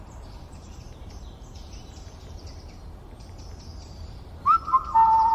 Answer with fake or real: fake